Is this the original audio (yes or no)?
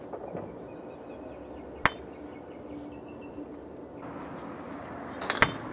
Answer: yes